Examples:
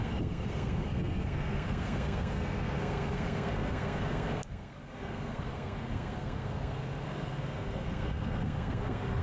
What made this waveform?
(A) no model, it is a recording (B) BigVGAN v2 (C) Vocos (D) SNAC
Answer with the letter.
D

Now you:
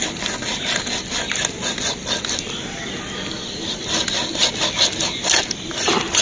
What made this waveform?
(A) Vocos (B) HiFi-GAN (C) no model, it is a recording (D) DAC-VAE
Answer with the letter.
C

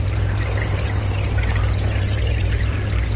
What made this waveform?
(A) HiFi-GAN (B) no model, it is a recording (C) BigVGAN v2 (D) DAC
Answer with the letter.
C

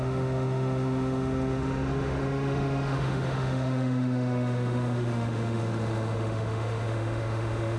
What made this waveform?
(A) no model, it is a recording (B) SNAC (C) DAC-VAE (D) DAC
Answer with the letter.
C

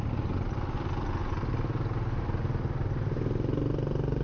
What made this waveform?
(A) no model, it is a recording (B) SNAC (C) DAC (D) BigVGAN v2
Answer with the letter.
A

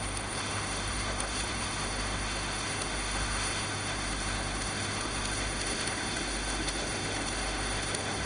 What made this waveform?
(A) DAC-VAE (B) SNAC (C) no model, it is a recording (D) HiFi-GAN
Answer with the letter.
A